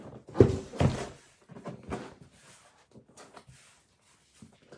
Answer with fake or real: real